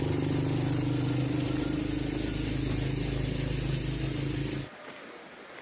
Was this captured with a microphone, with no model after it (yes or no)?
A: yes